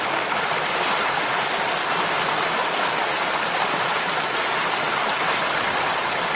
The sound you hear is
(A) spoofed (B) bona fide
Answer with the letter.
B